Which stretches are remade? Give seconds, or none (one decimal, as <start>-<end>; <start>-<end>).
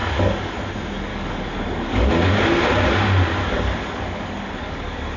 0.0-0.5; 1.1-2.3; 3.4-5.2